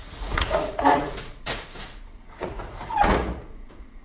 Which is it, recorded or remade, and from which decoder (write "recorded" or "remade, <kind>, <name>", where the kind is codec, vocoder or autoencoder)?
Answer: remade, vocoder, Vocos